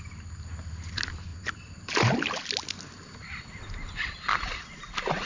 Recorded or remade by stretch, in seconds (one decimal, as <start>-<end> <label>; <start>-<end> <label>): 0.0-5.3 recorded